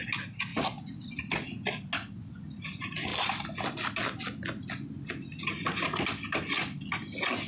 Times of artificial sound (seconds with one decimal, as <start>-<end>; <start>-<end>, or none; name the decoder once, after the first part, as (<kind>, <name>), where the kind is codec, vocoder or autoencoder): none